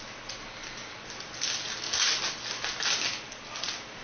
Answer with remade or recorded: recorded